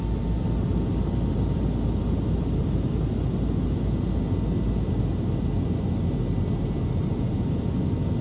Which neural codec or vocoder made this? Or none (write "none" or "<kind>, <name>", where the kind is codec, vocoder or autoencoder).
none